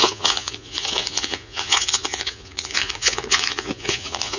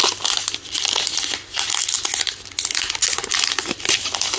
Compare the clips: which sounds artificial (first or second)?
first